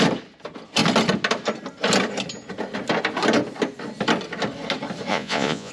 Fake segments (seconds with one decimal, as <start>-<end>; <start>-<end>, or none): 5.1-5.7

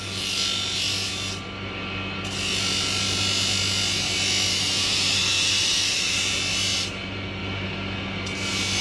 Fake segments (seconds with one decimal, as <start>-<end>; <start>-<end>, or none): 4.5-6.2

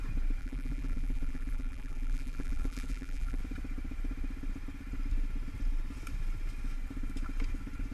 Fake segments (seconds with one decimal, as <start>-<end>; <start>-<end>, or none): 0.4-3.4

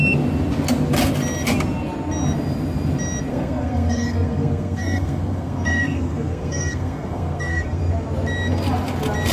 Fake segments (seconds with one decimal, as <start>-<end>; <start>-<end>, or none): 3.3-7.8

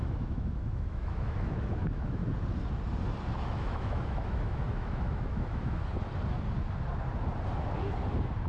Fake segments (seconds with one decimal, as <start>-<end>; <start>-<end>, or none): 0.0-2.2; 3.5-5.8

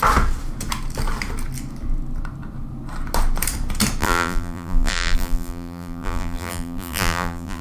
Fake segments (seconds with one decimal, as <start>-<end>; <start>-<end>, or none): 4.0-7.6